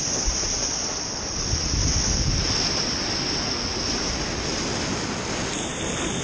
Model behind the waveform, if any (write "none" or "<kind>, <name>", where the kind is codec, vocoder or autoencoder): none